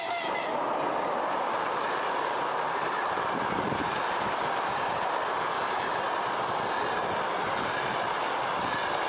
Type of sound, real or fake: real